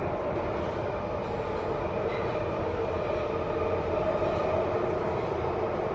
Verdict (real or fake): real